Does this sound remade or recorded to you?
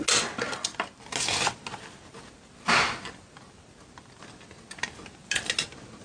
recorded